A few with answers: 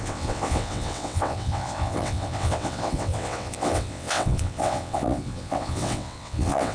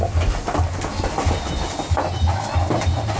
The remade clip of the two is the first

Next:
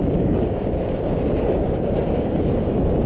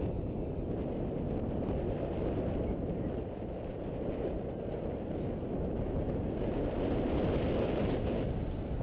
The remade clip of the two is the first